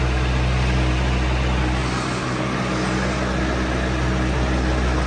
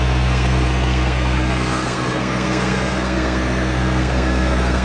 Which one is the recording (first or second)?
first